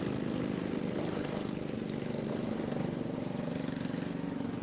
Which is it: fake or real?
real